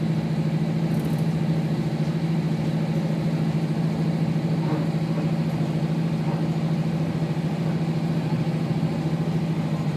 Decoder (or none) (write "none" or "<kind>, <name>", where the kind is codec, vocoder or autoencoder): none